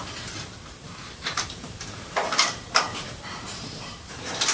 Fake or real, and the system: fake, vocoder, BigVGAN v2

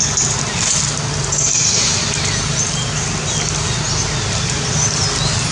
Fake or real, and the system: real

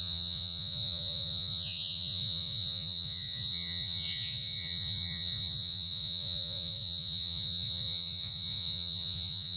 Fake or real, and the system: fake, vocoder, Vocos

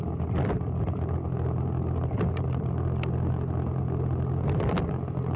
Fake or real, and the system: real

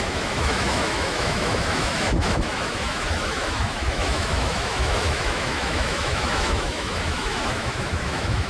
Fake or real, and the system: fake, autoencoder, DAC-VAE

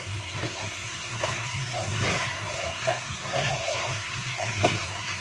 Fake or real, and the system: fake, codec, SNAC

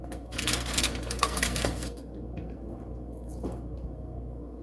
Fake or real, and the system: fake, codec, SNAC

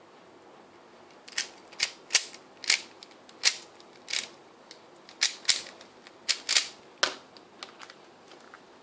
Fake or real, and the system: real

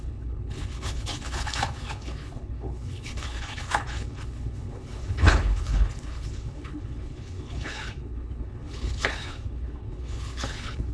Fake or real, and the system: fake, codec, HILCodec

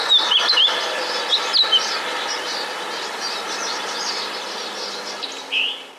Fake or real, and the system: real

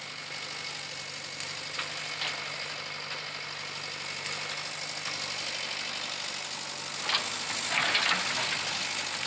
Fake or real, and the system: real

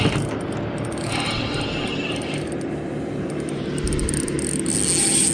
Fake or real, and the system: real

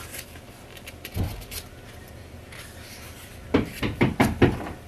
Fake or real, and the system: real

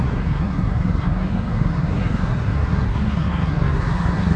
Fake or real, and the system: fake, codec, SNAC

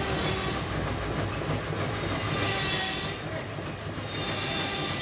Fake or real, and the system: real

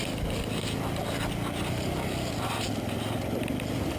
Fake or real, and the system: real